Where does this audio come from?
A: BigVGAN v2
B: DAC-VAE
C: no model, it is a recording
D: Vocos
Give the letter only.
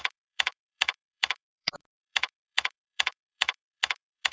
B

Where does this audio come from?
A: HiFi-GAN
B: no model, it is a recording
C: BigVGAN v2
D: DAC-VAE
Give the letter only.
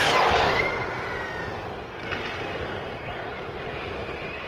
B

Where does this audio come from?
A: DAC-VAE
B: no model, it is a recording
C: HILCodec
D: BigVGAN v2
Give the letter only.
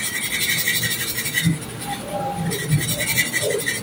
B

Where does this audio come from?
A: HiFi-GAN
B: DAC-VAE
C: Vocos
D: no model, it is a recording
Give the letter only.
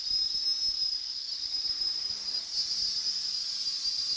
D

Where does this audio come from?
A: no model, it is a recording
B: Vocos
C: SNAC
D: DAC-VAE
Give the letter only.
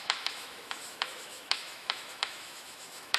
D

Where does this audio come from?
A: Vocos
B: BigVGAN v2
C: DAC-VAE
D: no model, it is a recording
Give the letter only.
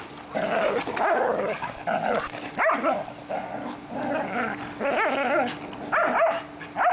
D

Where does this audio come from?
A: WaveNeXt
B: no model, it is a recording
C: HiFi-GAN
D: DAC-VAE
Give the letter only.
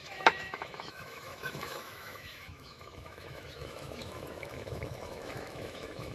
D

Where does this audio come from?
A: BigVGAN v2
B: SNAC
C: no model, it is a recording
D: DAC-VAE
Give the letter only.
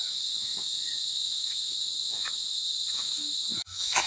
D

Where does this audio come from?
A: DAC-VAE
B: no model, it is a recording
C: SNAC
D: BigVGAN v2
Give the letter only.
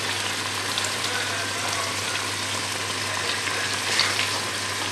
B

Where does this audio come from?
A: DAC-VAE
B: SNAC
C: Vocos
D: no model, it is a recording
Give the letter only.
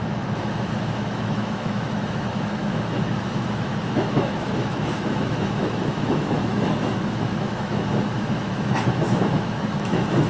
A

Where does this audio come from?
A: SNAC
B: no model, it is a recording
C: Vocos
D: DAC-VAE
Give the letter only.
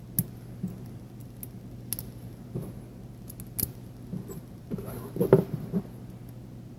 B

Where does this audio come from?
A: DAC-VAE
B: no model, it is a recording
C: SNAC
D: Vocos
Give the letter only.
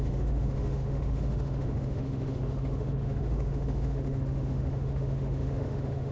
A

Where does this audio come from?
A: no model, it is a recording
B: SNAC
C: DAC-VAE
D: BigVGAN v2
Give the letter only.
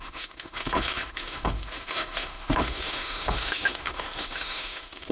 C